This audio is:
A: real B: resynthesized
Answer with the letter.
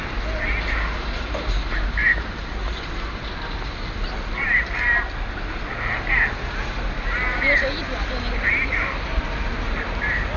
A